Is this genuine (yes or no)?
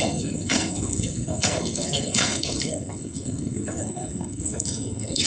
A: no